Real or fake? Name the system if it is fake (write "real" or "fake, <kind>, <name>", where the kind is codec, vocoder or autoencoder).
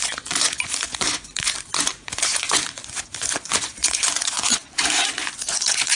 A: fake, vocoder, Vocos